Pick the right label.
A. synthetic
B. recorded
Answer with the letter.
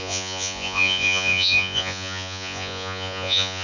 A